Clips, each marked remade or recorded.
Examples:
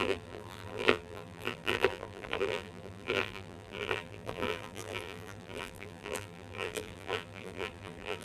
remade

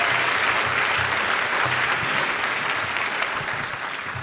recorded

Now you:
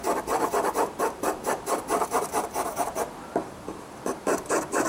remade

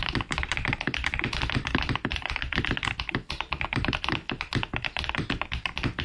remade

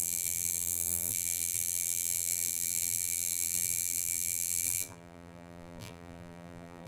remade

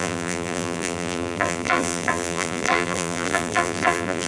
remade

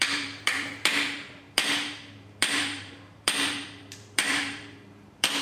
remade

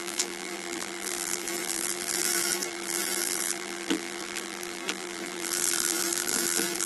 remade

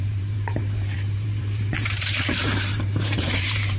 remade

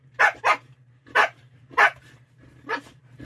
remade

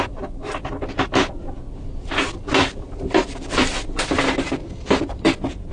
remade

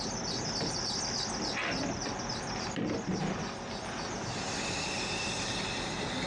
recorded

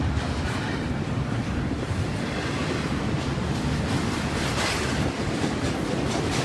remade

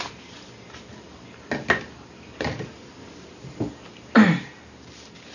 recorded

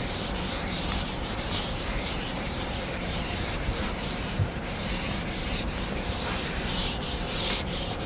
remade